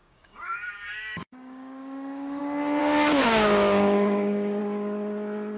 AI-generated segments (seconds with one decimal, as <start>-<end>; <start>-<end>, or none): 0.0-2.4; 2.8-4.6